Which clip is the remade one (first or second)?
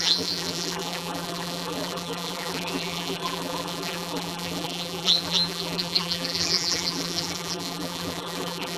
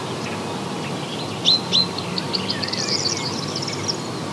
first